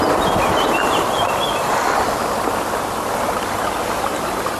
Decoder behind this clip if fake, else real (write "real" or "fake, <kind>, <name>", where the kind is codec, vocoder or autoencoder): real